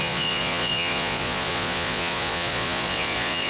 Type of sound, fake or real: fake